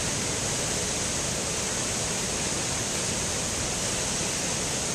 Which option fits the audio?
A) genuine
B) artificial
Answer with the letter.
A